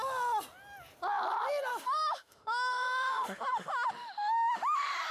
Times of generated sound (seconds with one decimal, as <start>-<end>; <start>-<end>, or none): 1.7-5.1

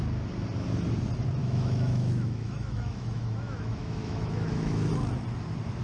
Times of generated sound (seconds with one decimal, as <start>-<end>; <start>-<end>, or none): 1.4-4.9

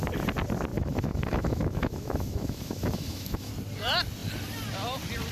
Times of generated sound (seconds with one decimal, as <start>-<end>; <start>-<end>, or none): 0.7-3.5

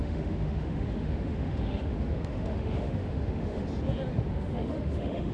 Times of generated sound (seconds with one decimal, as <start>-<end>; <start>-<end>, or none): 0.0-3.6; 4.3-5.3

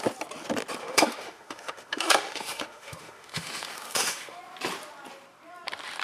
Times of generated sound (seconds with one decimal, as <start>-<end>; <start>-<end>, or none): 0.8-4.4